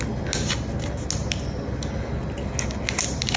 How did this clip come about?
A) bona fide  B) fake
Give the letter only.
A